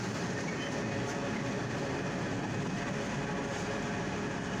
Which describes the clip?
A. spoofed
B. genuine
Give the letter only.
B